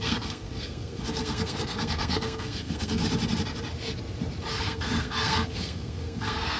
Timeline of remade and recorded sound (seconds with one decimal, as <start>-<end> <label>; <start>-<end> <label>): 0.0-3.0 remade; 3.0-4.5 recorded; 4.5-6.6 remade